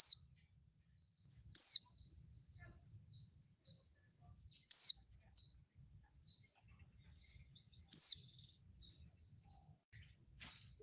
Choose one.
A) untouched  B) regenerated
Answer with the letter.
A